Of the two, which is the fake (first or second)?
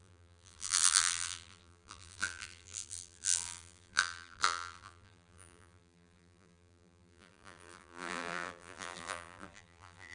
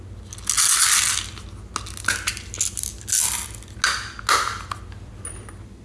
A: first